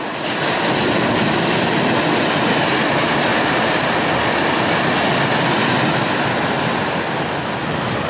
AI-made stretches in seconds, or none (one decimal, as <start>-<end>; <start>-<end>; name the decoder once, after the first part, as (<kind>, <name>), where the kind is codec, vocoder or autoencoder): none